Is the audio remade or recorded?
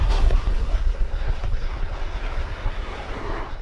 remade